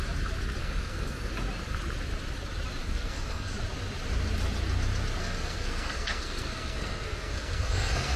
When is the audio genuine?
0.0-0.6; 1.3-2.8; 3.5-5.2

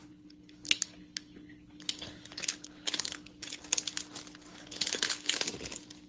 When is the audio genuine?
3.6-4.5; 5.4-6.1